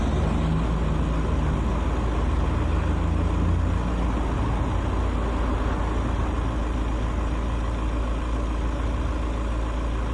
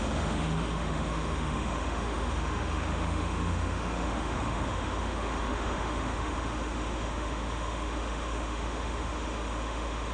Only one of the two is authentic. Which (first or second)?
first